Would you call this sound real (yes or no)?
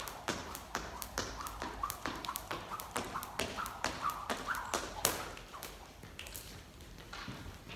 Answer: no